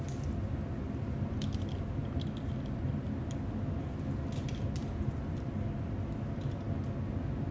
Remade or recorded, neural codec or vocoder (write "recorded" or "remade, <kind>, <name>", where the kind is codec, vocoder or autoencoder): recorded